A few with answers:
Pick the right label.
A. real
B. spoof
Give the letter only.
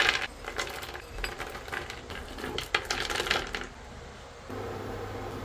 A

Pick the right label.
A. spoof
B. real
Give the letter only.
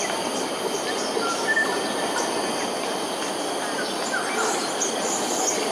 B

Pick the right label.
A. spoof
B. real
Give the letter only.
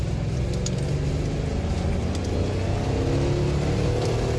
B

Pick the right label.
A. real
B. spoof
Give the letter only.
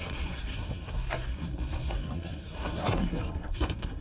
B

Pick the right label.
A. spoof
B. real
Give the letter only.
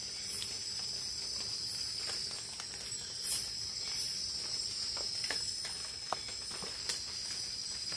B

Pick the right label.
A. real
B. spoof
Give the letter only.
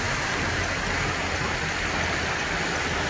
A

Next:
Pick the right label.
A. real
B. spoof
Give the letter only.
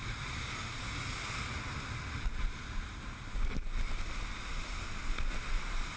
A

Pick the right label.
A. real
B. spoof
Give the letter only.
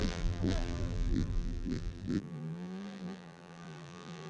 B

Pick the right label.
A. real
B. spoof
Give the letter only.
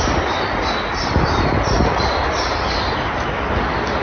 A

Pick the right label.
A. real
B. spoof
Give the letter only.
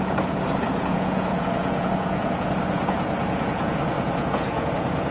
B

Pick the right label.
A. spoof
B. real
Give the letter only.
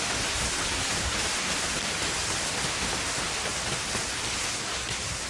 B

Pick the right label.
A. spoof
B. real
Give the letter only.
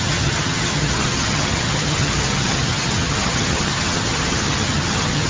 A